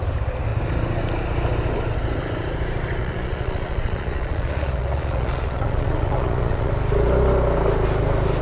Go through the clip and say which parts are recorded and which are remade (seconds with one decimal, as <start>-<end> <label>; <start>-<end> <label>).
0.0-3.0 recorded; 3.0-6.7 remade; 6.7-8.4 recorded